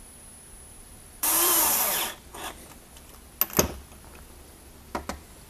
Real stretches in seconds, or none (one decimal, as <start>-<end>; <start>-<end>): 0.0-0.8; 1.6-5.5